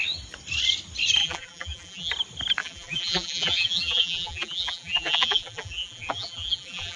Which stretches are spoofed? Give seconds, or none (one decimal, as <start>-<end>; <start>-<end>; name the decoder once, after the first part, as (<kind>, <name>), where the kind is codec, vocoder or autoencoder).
1.2-2.1 (vocoder, BigVGAN v2); 2.6-7.0